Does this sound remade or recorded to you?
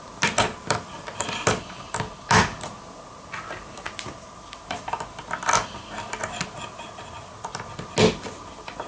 recorded